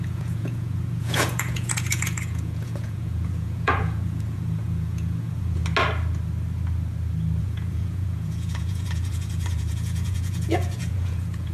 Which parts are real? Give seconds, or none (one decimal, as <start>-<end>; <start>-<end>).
5.6-7.4